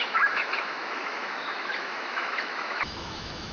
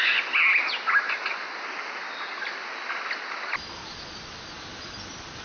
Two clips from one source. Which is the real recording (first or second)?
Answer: second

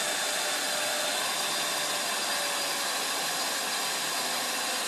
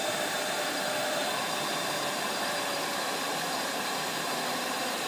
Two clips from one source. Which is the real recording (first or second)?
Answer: first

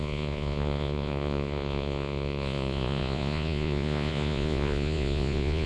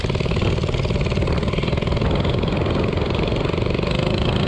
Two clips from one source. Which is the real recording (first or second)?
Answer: second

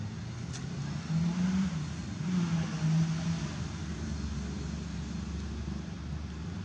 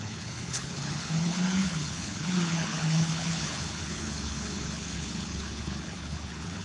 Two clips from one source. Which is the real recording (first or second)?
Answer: first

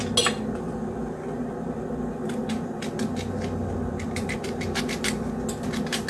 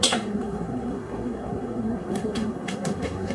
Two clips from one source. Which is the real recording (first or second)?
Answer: first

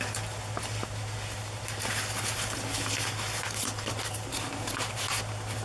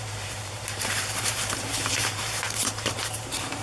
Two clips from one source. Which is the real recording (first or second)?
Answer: first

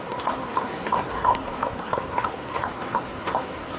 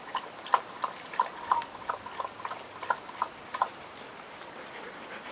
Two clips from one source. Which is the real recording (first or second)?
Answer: second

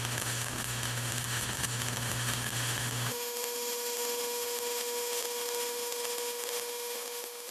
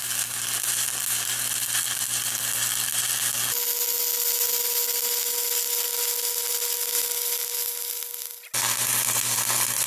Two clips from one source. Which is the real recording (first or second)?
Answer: second